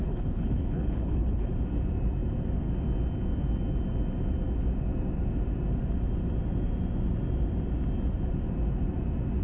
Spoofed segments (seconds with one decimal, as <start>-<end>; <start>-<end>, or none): 0.0-1.5